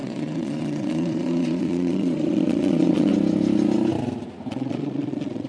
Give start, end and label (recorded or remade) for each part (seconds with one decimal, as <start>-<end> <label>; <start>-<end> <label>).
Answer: 0.0-3.1 remade; 3.1-4.5 recorded; 4.5-5.5 remade